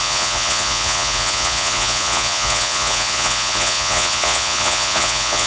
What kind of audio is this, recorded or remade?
remade